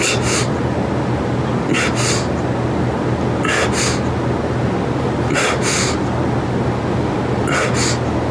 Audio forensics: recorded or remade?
recorded